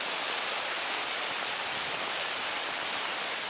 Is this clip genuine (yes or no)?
yes